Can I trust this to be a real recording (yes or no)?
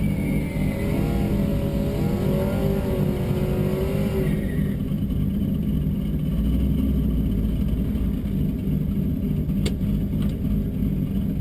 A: yes